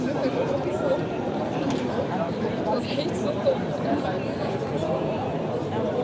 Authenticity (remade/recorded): remade